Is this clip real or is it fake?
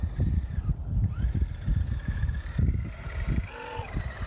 real